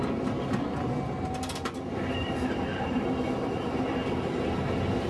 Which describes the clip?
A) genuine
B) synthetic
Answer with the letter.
A